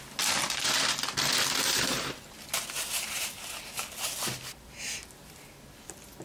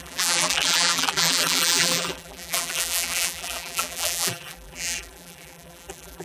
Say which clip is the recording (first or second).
first